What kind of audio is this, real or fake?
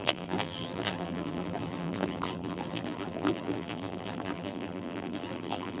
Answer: fake